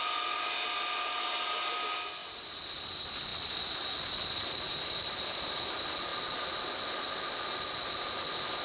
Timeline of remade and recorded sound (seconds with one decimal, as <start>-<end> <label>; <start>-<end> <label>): 0.0-8.6 recorded